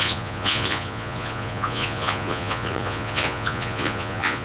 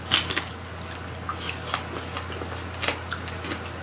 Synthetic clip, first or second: first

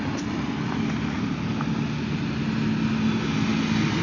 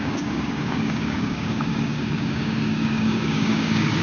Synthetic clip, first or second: second